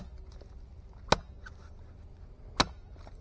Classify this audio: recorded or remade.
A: recorded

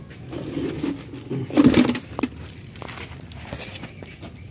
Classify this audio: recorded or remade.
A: recorded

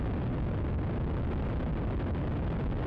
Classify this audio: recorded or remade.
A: recorded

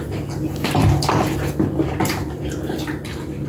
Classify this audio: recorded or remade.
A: recorded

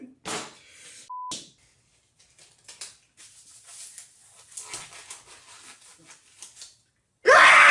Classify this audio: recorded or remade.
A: recorded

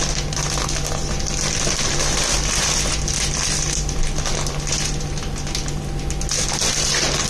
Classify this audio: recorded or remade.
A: recorded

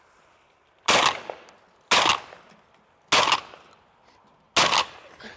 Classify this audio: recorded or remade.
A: recorded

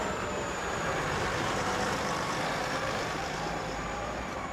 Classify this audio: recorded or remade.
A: remade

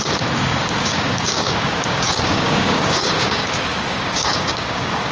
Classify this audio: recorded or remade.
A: remade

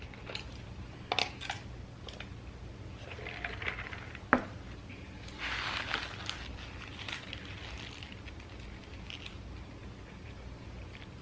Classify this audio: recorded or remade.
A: recorded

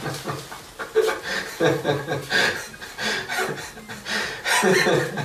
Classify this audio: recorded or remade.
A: recorded